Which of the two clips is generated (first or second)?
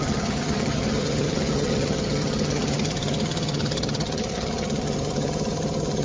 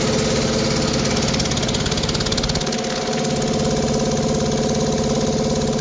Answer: first